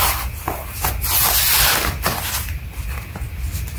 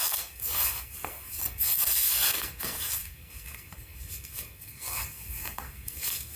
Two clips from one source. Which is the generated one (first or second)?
second